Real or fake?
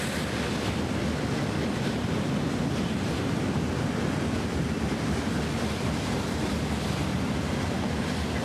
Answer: real